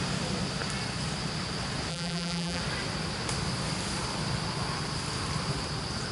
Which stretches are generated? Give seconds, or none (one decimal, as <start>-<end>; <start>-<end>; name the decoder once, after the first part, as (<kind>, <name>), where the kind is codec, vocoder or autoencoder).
1.9-2.6 (vocoder, BigVGAN v2)